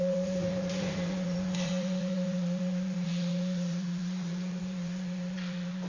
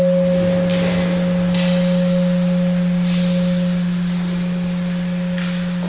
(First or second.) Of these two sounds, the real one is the second